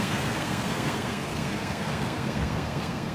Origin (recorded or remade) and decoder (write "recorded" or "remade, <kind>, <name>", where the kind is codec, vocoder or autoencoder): remade, codec, SNAC